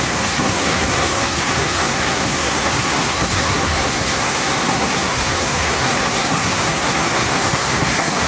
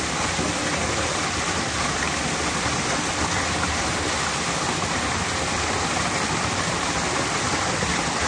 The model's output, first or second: first